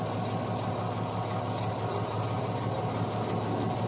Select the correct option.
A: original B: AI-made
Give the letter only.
A